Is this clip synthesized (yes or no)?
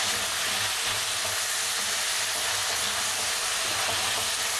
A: no